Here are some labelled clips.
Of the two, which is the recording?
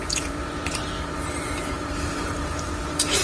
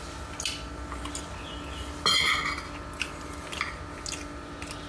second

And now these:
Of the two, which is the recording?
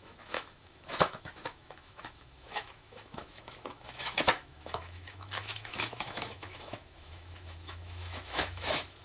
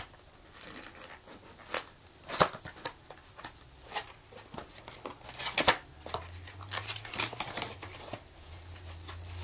second